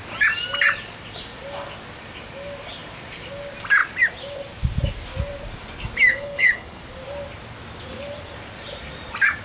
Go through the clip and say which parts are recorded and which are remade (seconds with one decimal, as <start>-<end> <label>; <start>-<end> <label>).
0.0-6.1 recorded; 6.1-6.8 remade; 6.8-9.4 recorded

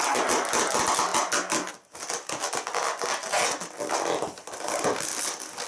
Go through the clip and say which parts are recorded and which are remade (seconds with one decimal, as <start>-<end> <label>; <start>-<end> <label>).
0.0-5.7 recorded

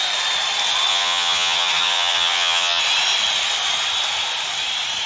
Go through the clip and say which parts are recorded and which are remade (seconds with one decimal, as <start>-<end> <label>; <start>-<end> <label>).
0.0-0.9 recorded; 0.9-2.8 remade; 2.8-5.1 recorded

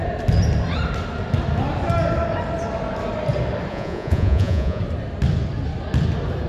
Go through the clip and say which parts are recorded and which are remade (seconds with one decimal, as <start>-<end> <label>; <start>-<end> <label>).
0.0-3.7 recorded; 3.7-4.8 remade; 4.8-6.5 recorded

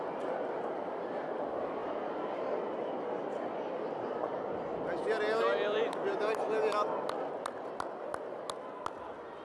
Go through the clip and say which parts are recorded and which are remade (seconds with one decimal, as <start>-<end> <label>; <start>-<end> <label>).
0.0-9.4 recorded

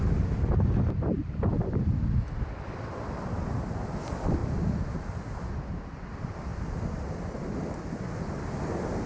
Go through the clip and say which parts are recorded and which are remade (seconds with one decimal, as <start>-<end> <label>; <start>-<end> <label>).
0.0-9.1 recorded

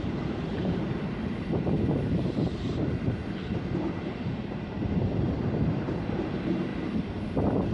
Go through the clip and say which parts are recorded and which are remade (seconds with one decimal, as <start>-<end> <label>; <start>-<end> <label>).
0.0-6.7 remade; 6.7-7.7 recorded